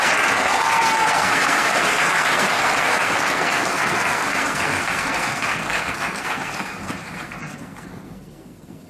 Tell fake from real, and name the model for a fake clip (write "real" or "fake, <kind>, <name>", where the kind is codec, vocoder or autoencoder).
fake, codec, SNAC